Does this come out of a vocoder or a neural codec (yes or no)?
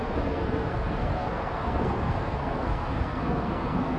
yes